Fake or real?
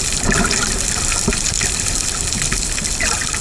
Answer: real